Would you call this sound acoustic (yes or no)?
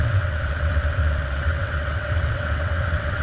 no